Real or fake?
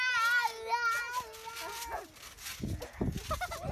real